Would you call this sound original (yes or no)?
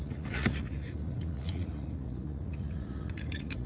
no